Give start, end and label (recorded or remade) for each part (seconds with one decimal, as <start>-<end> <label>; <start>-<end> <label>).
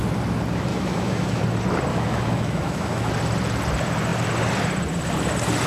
0.0-0.7 recorded; 0.7-1.4 remade; 1.4-1.9 recorded; 1.9-3.1 remade; 3.1-5.7 recorded